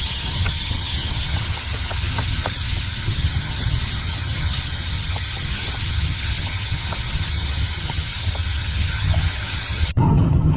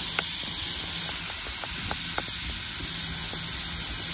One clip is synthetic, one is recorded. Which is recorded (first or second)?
second